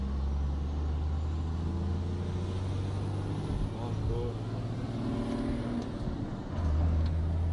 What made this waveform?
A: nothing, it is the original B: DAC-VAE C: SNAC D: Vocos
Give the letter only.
A